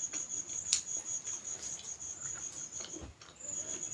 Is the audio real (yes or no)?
yes